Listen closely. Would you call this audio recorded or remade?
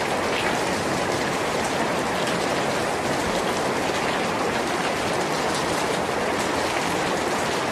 recorded